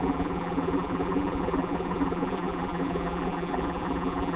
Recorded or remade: remade